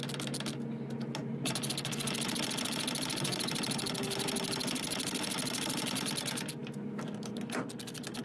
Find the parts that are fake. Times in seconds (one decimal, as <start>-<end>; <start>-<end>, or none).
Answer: 1.2-1.7